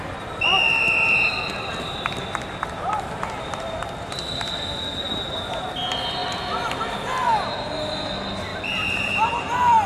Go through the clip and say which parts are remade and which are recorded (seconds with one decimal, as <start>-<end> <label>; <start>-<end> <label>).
0.0-8.5 recorded; 8.5-9.3 remade; 9.3-9.9 recorded